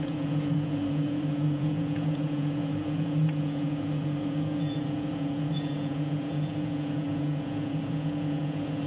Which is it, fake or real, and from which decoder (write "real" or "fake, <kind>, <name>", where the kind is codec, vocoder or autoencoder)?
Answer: fake, vocoder, Vocos